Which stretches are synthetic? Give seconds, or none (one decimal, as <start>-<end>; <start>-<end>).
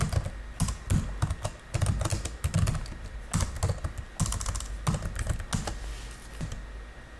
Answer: none